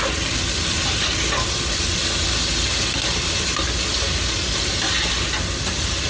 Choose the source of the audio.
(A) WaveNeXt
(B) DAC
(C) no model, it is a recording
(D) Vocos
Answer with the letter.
C